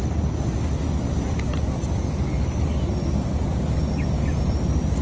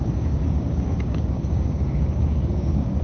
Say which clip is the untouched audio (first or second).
first